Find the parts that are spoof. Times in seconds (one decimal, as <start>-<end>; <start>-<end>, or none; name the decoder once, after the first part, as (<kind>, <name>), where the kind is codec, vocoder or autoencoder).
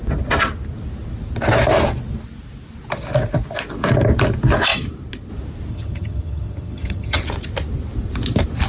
5.7-7.2 (vocoder, HiFi-GAN)